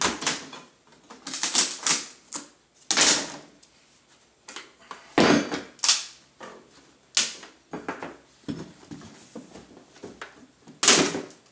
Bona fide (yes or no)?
yes